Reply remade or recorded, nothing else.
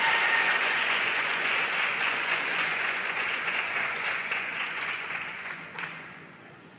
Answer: remade